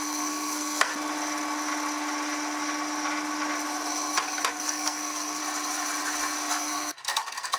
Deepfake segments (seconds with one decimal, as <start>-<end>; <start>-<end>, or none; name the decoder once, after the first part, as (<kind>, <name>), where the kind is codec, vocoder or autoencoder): 0.0-0.9 (codec, SNAC); 4.5-5.4; 6.5-7.6